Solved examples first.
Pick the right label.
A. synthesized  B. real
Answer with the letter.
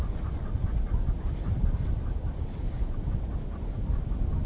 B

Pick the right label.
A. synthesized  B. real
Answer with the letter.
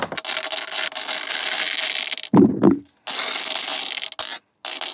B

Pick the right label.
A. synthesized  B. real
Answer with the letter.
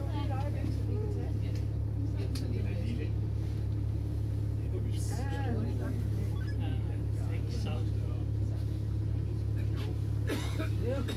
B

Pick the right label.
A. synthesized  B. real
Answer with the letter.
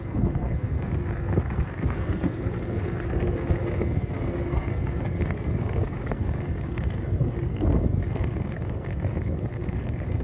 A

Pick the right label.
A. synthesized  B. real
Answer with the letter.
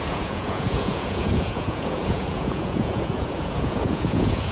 A